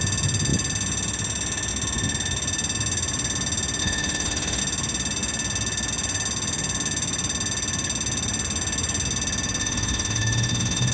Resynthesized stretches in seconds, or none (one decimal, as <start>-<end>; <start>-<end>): 3.8-4.6; 9.6-10.9

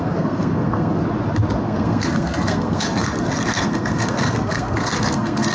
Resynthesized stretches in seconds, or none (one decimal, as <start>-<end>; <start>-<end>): 0.0-1.0; 1.6-5.5

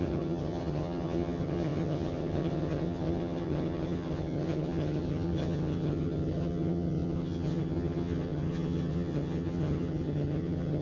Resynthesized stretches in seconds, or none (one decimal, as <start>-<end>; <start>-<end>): 0.0-10.8

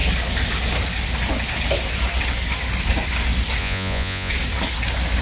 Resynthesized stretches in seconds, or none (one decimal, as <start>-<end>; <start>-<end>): 3.6-4.3

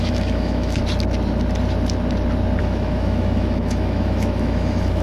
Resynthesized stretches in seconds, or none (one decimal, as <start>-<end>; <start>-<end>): 0.0-0.8; 2.6-5.0

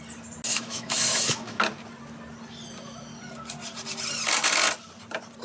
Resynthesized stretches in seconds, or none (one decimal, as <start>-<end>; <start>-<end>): 0.5-1.6